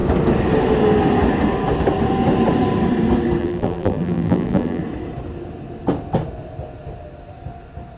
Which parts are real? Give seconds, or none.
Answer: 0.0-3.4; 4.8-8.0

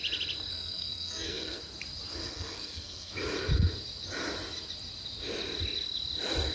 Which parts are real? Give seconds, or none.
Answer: 0.0-0.5; 1.6-2.2; 3.1-6.5

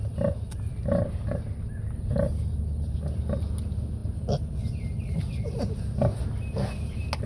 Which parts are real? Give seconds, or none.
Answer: 0.0-7.3

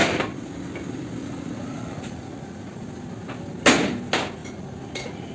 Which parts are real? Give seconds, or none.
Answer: 0.0-1.2; 2.9-4.4

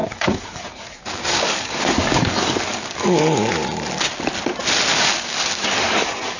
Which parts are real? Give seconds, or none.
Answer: 3.5-4.9

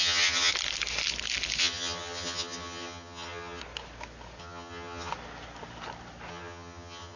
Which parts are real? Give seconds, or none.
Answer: 0.5-1.6; 3.6-4.4; 5.1-6.3

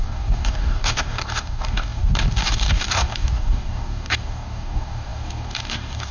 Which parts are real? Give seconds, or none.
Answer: none

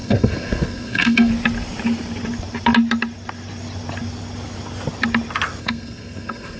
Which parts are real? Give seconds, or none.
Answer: 1.3-5.6